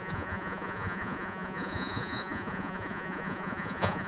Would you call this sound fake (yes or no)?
yes